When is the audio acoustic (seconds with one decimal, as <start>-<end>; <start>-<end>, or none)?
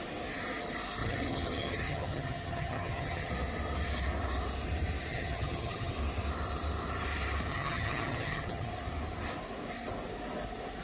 0.0-1.0; 3.3-5.1; 5.9-7.5; 8.7-10.8